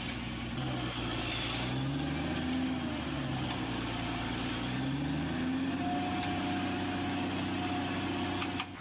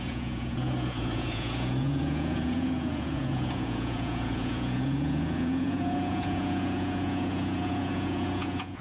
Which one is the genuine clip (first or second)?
first